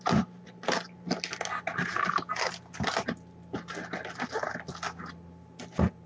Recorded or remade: recorded